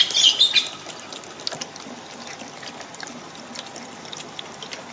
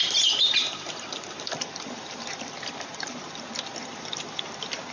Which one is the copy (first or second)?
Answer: second